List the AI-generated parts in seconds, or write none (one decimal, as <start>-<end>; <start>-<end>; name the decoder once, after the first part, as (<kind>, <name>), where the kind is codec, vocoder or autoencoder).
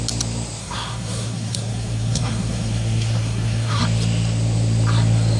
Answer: 0.6-3.8 (codec, SNAC)